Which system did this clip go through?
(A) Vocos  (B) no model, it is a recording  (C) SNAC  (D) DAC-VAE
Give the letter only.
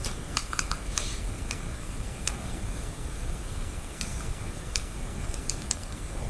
C